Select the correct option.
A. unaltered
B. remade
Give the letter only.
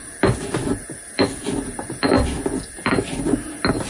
A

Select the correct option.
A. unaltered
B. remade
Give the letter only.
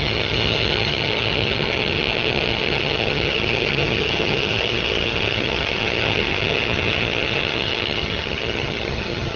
B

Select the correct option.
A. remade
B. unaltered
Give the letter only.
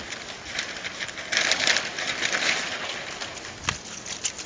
B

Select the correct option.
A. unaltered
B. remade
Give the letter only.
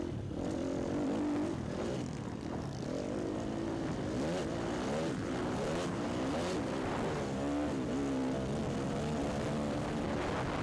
A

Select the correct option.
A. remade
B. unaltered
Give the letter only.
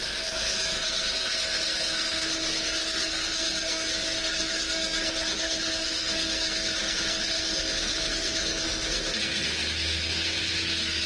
A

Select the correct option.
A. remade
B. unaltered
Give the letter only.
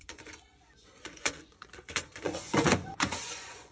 A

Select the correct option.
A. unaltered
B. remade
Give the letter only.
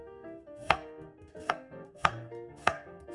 B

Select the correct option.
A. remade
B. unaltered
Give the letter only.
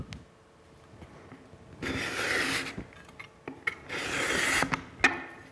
B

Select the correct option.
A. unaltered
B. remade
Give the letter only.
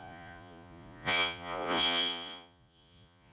B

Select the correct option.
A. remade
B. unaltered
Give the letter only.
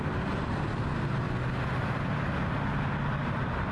B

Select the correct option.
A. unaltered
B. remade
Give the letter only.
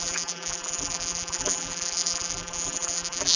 B